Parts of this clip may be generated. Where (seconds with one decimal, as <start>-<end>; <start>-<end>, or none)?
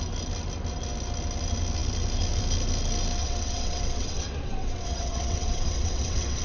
3.2-6.4